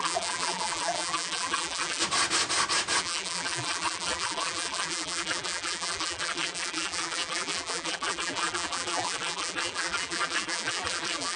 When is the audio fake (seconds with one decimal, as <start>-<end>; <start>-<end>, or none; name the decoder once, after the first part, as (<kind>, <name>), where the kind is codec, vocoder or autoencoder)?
0.0-2.0 (vocoder, BigVGAN v2); 3.0-11.4